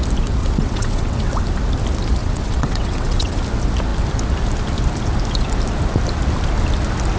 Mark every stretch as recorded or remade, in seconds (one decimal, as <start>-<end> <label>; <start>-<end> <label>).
0.0-0.4 recorded; 0.4-1.4 remade; 1.4-2.2 recorded; 2.2-3.4 remade; 3.4-7.2 recorded